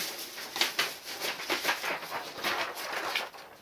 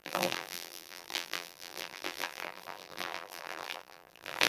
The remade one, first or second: second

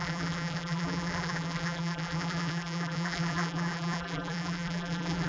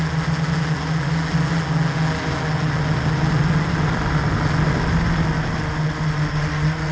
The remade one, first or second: first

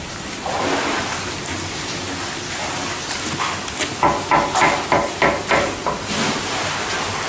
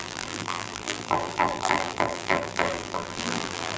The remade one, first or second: second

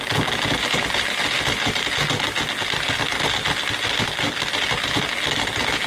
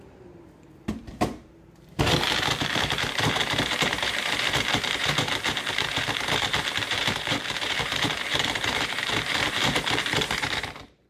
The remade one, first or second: second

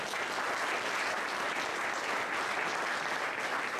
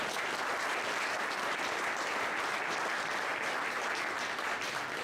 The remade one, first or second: second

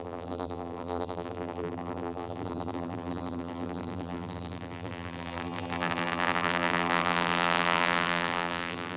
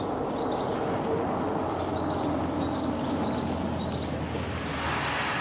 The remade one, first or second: first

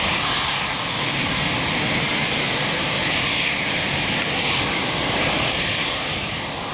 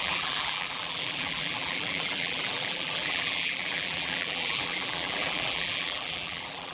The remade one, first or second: second